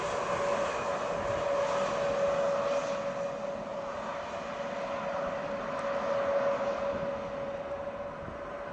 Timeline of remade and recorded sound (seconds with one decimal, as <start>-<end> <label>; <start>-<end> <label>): 0.0-8.7 recorded